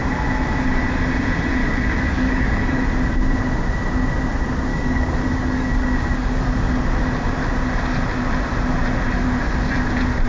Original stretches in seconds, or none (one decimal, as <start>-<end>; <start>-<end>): 0.0-1.6; 2.8-4.7; 6.8-10.3